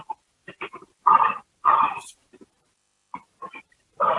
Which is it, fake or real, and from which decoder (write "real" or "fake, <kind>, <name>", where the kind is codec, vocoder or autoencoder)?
fake, vocoder, BigVGAN v2